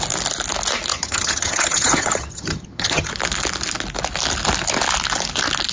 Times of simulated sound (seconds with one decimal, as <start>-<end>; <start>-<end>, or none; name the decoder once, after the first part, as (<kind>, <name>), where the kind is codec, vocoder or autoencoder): 0.9-3.1 (vocoder, HiFi-GAN)